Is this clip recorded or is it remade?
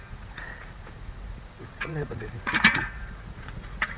remade